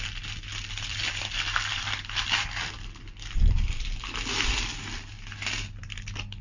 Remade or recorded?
remade